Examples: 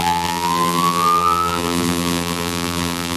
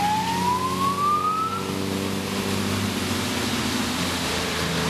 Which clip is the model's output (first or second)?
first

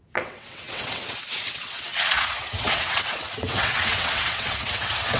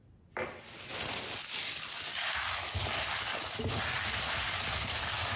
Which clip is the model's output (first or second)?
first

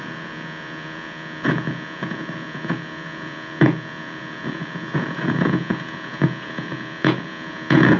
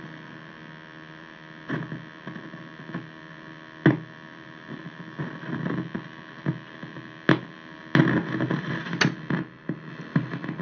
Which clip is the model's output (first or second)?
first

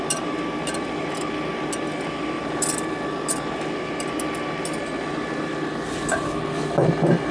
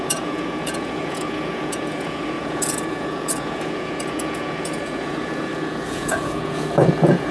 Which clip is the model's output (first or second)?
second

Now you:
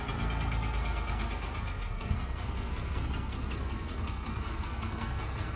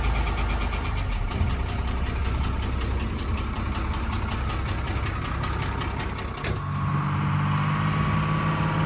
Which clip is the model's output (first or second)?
first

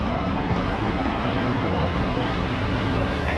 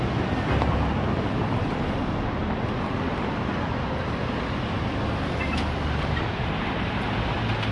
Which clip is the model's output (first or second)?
first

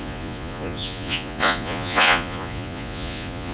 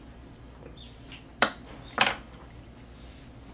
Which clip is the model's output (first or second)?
first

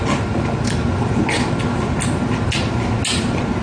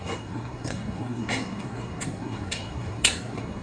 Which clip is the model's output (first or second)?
second